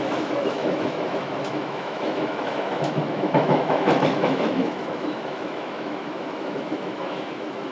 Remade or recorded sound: remade